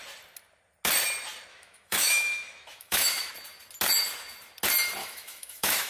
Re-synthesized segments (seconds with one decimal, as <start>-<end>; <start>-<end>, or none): 1.5-3.3; 5.0-5.9